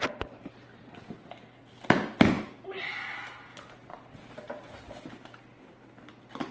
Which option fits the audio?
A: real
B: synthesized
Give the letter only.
A